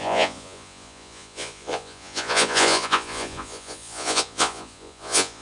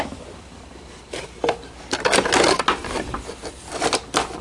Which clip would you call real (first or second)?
second